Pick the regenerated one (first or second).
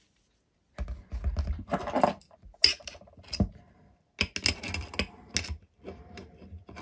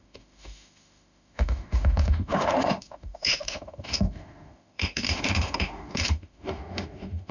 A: second